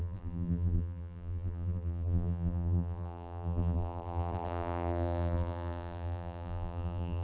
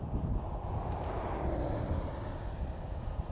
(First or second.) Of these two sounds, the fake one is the first